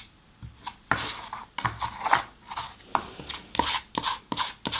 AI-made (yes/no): no